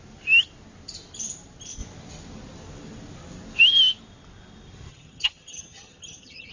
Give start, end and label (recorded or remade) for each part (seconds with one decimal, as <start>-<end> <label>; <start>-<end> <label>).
0.0-4.9 recorded; 4.9-6.5 remade